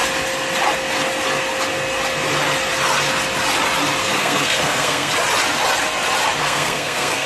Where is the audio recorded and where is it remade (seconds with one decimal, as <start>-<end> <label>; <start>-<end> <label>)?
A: 0.0-4.0 recorded; 4.0-5.1 remade; 5.1-6.4 recorded; 6.4-7.3 remade